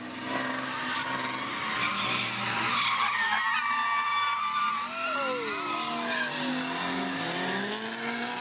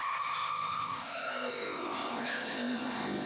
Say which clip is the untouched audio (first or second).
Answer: first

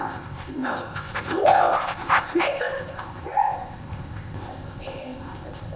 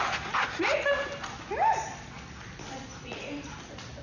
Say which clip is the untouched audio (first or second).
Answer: second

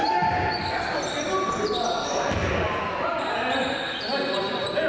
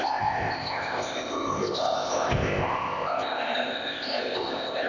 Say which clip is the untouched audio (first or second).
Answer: first